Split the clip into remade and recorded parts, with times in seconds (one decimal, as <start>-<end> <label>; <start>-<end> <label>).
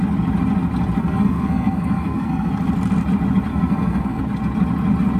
0.0-1.0 recorded; 1.0-2.5 remade; 2.5-3.5 recorded; 3.5-4.2 remade; 4.2-5.2 recorded